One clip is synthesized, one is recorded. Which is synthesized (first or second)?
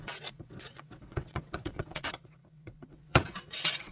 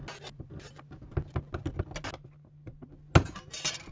first